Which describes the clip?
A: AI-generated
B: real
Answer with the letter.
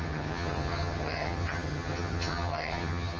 A